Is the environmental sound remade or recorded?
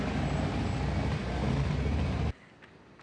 recorded